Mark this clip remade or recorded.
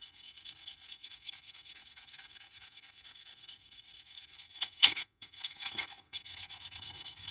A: remade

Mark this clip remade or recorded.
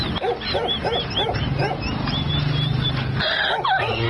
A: recorded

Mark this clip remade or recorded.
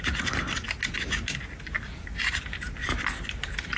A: recorded